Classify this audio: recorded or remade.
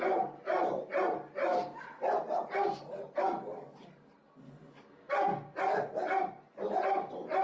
recorded